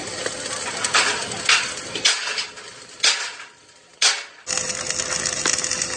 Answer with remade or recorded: recorded